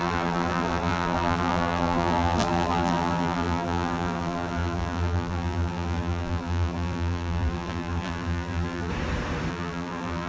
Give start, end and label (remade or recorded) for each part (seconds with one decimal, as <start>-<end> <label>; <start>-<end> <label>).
0.0-8.9 remade; 8.9-9.5 recorded; 9.5-10.3 remade